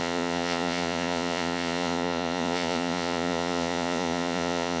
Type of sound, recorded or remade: remade